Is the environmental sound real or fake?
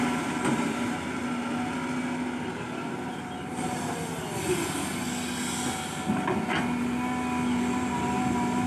real